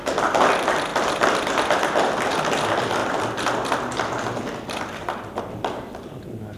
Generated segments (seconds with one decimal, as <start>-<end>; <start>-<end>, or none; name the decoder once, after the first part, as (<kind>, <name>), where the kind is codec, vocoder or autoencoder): 0.9-1.5 (vocoder, BigVGAN v2); 3.0-5.4